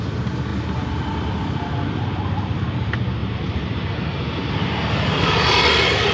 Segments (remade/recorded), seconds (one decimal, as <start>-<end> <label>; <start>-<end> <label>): 0.0-3.2 recorded; 3.2-5.6 remade; 5.6-6.1 recorded